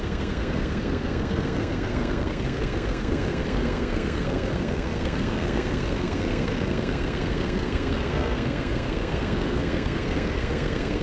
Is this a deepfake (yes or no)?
yes